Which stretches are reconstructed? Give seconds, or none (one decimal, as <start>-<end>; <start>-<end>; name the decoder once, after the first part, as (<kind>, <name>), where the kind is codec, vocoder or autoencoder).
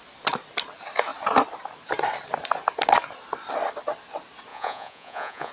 4.5-5.5 (vocoder, Vocos)